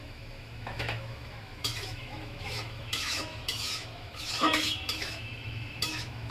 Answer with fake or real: fake